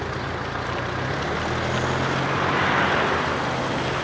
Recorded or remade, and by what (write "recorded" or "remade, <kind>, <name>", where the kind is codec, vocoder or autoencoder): recorded